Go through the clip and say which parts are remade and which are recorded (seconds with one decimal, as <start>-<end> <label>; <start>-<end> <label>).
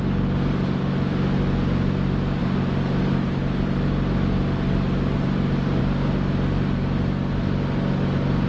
0.0-8.5 recorded